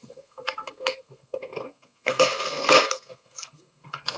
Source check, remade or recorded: remade